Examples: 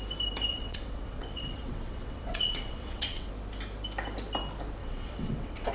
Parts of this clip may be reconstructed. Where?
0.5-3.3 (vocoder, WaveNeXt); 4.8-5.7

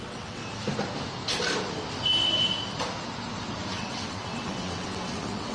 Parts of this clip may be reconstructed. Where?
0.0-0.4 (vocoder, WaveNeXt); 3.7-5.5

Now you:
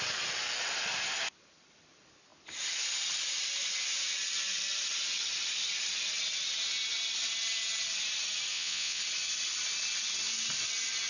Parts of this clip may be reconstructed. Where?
8.5-9.0 (vocoder, WaveNeXt)

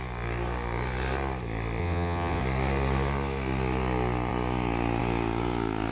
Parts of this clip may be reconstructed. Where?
1.8-2.4 (vocoder, WaveNeXt)